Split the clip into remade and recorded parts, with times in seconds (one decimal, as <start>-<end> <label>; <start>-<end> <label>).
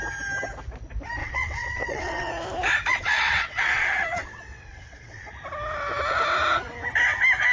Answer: 0.0-1.2 recorded; 1.2-2.3 remade; 2.3-2.9 recorded; 2.9-5.4 remade; 5.4-7.5 recorded